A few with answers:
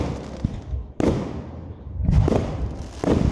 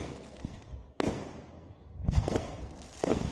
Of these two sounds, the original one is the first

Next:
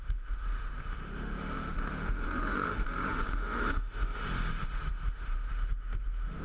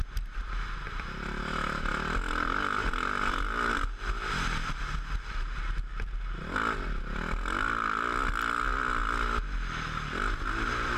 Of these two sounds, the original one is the second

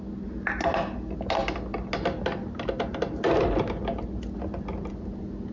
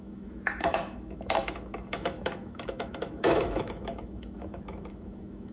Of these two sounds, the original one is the first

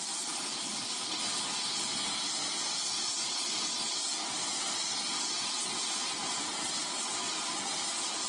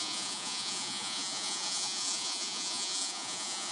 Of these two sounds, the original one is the first